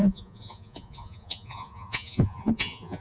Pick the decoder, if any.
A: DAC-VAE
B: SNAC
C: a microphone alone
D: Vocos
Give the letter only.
D